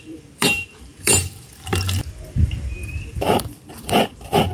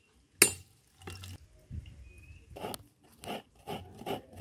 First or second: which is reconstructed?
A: first